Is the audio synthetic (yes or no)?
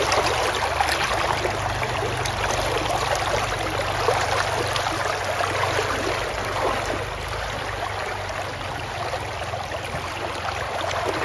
no